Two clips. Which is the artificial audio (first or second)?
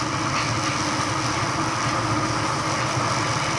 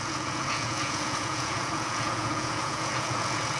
second